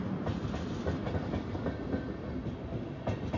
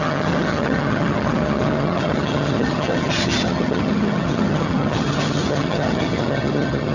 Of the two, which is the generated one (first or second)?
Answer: second